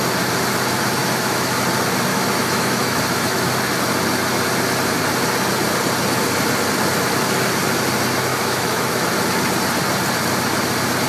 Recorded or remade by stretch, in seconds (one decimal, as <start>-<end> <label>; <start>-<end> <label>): 0.0-1.0 recorded; 1.0-1.6 remade; 1.6-2.1 recorded; 2.1-3.5 remade; 3.5-8.3 recorded; 8.3-9.1 remade; 9.1-11.1 recorded